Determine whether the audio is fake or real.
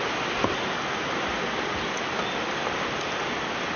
real